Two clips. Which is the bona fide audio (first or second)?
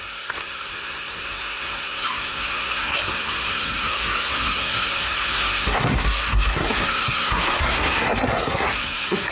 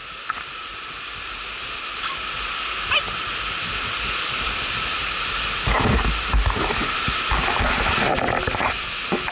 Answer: second